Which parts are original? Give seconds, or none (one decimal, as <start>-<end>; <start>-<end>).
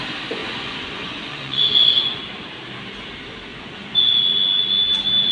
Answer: 0.0-0.4; 2.2-3.5; 4.2-5.3